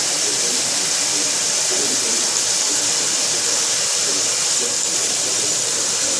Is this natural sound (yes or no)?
no